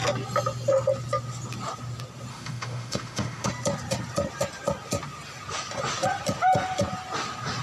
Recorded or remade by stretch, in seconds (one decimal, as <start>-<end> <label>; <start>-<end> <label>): 0.0-2.3 recorded; 2.3-3.5 remade; 3.5-7.6 recorded